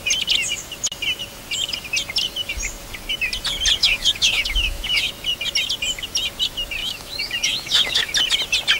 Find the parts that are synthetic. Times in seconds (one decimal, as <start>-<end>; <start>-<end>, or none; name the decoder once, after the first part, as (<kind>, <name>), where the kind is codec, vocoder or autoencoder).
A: 3.8-5.1 (autoencoder, DAC-VAE); 6.8-8.1